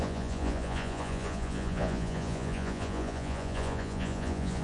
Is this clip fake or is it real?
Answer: fake